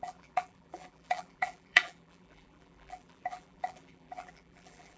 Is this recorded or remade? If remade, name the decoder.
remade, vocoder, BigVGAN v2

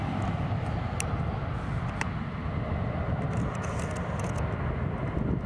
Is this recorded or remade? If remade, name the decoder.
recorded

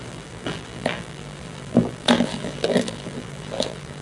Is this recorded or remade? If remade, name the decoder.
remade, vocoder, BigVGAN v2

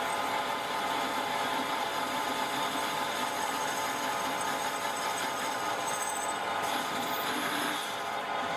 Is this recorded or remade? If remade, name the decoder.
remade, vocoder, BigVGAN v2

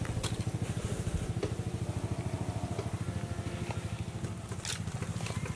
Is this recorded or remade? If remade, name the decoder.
recorded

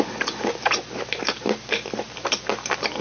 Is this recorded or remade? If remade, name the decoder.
recorded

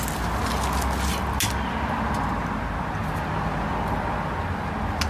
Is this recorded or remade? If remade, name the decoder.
recorded